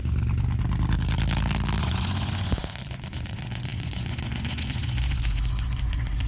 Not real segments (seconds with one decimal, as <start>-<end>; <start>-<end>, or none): 1.8-6.3